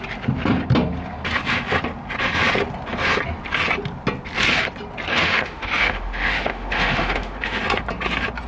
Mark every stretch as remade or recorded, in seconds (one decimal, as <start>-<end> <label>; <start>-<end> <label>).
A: 0.0-5.1 recorded; 5.1-7.6 remade; 7.6-8.5 recorded